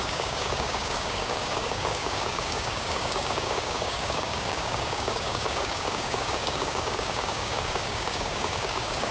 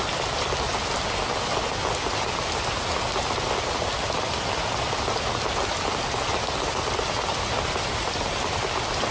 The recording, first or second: second